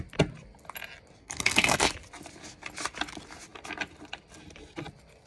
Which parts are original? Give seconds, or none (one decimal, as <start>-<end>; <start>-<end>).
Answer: 0.0-1.2; 1.9-5.3